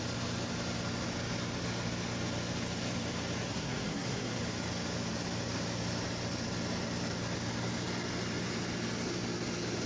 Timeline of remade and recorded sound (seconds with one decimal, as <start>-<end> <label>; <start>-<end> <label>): 0.0-3.5 recorded; 3.5-4.4 remade; 4.4-9.9 recorded